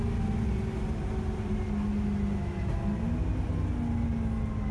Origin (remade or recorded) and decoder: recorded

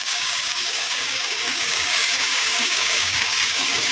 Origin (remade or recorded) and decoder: remade, codec, DAC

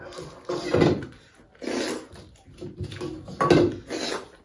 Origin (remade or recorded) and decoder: recorded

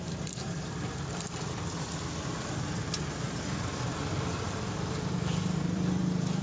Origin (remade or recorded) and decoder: remade, vocoder, BigVGAN v2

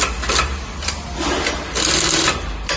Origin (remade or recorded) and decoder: recorded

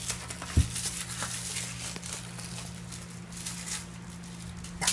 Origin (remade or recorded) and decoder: recorded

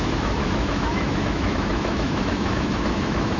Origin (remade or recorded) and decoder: remade, autoencoder, DAC-VAE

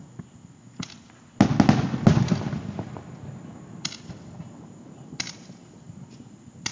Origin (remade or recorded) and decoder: recorded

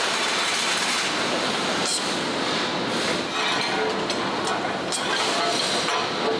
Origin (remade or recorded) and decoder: recorded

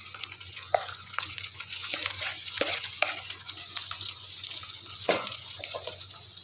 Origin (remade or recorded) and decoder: remade, vocoder, Vocos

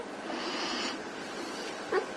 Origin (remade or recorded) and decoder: recorded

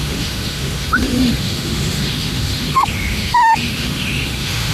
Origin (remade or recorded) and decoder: remade, autoencoder, DAC-VAE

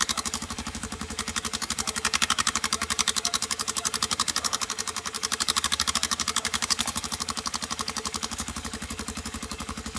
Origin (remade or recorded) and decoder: remade, codec, DAC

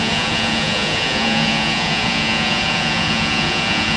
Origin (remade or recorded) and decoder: remade, vocoder, Vocos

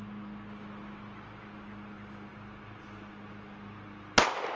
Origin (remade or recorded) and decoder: recorded